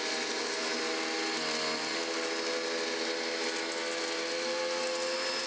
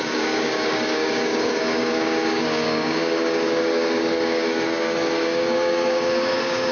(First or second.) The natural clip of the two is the first